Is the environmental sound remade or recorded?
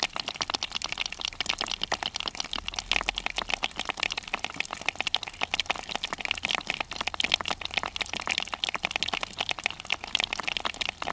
recorded